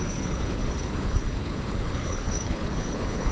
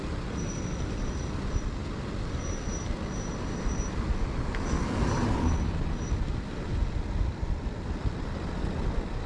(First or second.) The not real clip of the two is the first